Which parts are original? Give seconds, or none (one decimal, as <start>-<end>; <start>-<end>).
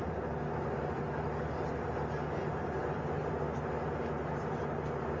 0.0-5.2